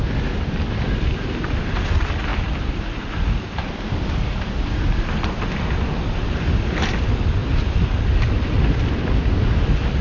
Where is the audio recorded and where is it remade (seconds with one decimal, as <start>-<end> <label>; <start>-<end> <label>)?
0.0-10.0 recorded

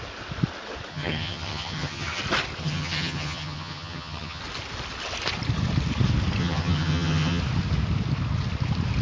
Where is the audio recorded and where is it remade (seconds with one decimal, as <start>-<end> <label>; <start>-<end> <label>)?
0.0-0.9 recorded; 0.9-2.2 remade; 2.2-2.6 recorded; 2.6-4.4 remade; 4.4-6.4 recorded; 6.4-7.4 remade; 7.4-9.0 recorded

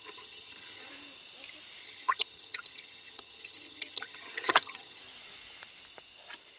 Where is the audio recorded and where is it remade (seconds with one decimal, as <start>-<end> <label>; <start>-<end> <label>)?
0.0-0.9 remade; 0.9-1.8 recorded; 1.8-5.0 remade; 5.0-6.6 recorded

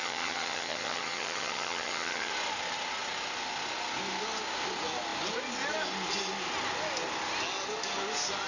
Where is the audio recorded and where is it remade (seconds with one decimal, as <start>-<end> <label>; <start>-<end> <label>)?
0.0-2.3 remade; 2.3-8.5 recorded

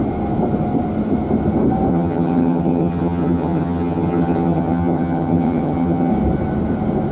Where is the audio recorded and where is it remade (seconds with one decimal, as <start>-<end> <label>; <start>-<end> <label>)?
0.0-1.9 recorded; 1.9-6.1 remade; 6.1-7.1 recorded

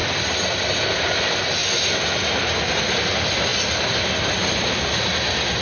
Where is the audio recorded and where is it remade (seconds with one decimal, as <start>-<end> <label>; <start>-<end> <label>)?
0.0-5.6 recorded

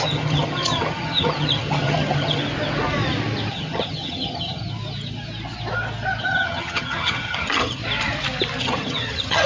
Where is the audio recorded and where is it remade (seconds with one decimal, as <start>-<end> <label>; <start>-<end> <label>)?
0.0-2.4 remade; 2.4-3.5 recorded; 3.5-4.6 remade; 4.6-6.2 recorded; 6.2-7.8 remade; 7.8-8.6 recorded; 8.6-9.5 remade